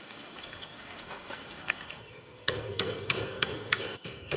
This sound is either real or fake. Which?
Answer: fake